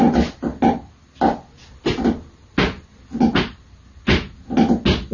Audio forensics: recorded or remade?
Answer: recorded